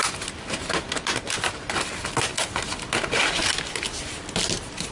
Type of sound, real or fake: real